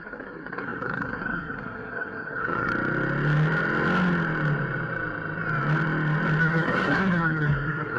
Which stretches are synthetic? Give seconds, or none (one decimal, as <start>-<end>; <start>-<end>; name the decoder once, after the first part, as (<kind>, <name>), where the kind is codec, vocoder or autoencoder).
0.0-2.7 (codec, SNAC); 6.4-8.0